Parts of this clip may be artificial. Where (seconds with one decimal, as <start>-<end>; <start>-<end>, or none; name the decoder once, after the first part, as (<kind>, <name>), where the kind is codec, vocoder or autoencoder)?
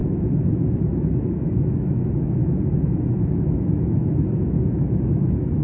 0.0-5.6 (autoencoder, DAC-VAE)